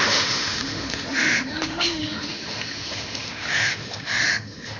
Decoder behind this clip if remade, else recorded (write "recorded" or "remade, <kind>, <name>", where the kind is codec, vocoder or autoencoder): remade, autoencoder, DAC-VAE